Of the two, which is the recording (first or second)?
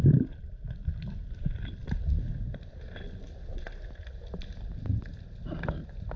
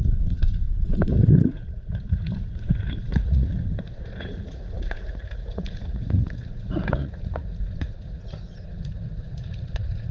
first